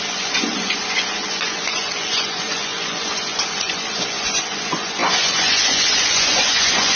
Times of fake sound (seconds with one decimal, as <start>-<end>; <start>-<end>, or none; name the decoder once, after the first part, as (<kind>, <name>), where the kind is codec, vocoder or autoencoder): 0.0-7.0 (vocoder, Vocos)